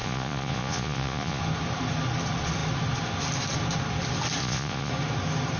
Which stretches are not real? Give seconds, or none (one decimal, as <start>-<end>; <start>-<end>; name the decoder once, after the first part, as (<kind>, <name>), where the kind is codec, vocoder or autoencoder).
0.0-1.4 (vocoder, Vocos); 4.4-4.9